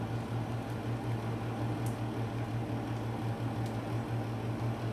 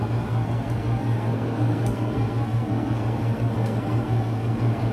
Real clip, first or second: first